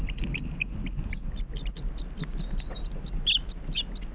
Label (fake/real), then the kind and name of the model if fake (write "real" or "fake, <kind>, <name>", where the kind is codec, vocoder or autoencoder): real